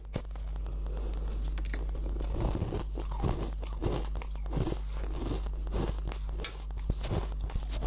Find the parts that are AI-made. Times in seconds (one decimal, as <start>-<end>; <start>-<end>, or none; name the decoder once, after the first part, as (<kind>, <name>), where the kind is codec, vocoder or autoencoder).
none